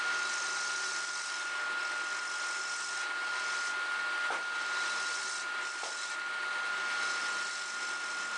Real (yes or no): yes